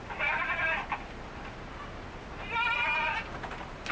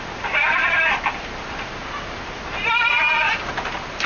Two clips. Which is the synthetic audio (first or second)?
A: second